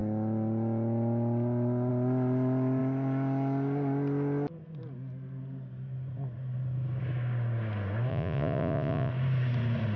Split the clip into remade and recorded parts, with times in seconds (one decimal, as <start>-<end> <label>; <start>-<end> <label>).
0.0-8.1 recorded; 8.1-9.1 remade; 9.1-10.0 recorded